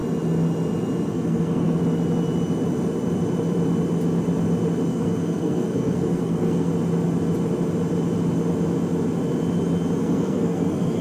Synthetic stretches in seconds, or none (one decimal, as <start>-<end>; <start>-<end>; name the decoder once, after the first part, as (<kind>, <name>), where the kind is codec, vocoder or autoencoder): 1.1-1.8 (codec, SNAC); 4.9-6.7; 10.0-11.0